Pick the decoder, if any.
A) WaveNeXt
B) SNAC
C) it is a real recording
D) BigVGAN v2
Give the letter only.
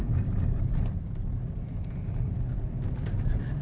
C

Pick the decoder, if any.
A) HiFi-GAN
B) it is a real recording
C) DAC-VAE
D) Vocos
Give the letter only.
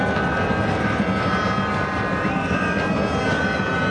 B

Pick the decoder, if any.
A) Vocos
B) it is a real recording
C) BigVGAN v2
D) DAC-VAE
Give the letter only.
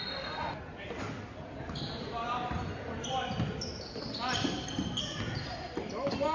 B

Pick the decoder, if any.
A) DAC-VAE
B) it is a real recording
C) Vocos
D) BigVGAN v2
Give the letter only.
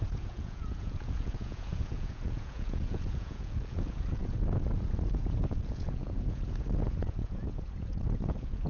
C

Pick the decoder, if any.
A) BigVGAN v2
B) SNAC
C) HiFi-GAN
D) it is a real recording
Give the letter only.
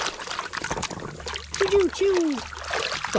D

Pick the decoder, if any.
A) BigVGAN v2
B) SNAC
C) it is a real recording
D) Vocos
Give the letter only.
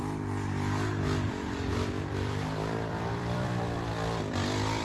A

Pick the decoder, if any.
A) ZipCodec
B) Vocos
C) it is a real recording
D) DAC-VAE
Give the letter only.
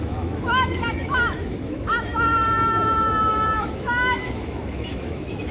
D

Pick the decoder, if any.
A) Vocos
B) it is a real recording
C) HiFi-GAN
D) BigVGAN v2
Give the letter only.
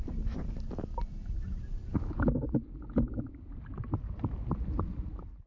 B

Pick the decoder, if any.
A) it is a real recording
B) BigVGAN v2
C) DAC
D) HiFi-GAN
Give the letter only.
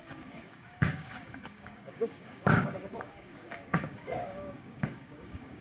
C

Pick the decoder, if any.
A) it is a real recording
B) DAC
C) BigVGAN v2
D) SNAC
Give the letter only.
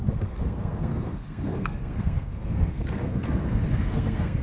D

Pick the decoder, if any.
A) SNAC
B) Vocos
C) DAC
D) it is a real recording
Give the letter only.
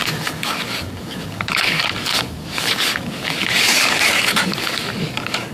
C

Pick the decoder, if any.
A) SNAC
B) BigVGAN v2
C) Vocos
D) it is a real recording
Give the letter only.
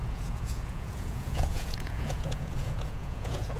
C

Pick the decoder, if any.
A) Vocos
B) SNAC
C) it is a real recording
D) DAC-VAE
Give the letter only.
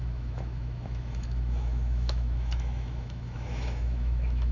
D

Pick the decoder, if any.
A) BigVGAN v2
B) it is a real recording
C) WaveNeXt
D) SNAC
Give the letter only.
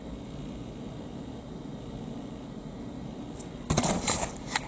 B